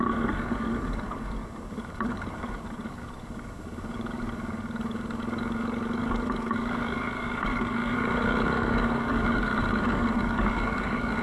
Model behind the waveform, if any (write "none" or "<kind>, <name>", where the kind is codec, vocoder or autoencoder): codec, DAC